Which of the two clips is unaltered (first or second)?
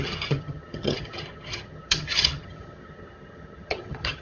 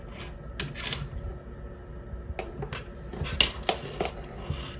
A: second